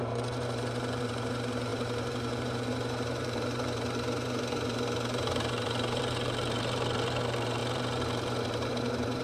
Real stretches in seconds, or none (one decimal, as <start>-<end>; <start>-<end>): none